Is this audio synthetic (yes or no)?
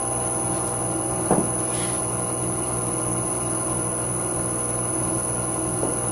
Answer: no